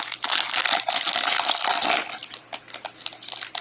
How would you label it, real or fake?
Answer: real